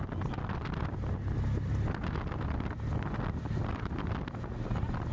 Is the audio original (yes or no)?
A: yes